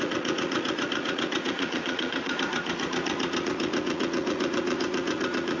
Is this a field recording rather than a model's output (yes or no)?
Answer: no